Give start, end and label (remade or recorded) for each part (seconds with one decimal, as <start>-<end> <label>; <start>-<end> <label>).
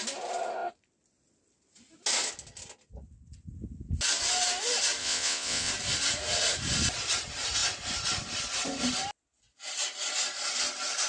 0.0-5.0 recorded; 5.0-5.7 remade; 5.7-11.1 recorded